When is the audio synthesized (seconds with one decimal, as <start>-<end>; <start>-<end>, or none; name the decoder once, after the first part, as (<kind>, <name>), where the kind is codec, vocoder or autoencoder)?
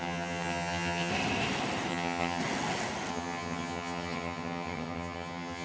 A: 0.0-1.1 (vocoder, HiFi-GAN); 1.9-2.4; 3.1-5.6